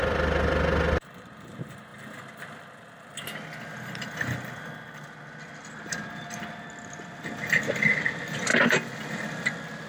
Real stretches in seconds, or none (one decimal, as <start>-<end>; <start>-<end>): 0.0-9.9